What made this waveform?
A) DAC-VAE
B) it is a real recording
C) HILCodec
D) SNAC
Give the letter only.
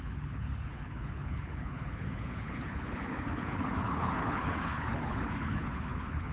C